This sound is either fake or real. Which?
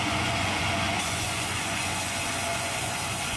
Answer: fake